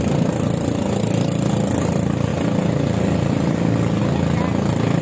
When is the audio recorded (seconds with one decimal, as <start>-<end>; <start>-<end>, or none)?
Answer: 0.0-5.0